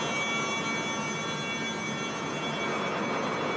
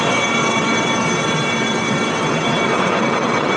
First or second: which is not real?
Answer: second